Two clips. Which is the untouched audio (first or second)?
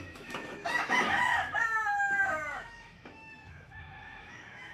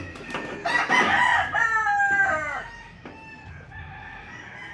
second